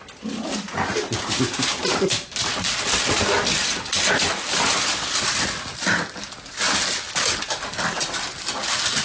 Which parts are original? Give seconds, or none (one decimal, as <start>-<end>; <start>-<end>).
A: 0.0-9.0